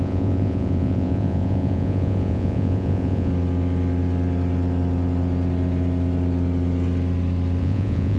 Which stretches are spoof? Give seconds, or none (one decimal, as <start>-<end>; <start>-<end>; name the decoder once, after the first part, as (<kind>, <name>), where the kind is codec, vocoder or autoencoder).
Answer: 0.0-3.3 (vocoder, Vocos); 7.6-8.2